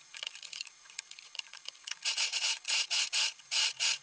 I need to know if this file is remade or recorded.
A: remade